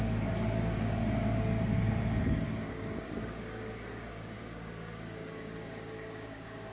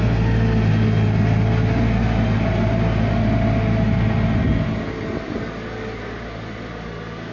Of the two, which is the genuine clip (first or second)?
second